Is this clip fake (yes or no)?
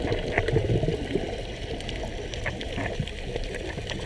no